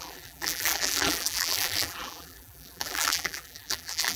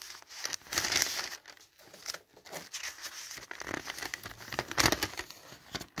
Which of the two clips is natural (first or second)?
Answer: second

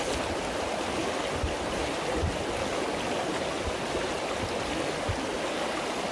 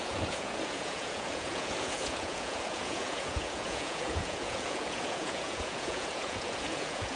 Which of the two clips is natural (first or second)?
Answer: first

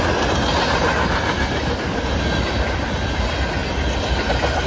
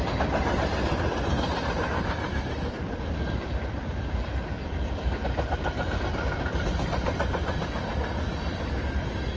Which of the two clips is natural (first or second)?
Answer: first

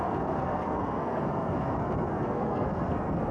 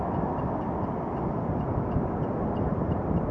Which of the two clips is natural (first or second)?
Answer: second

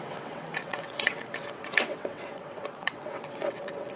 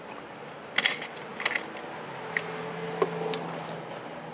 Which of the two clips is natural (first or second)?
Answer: second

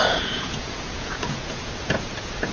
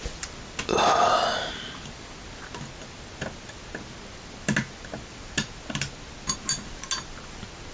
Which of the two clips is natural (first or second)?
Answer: second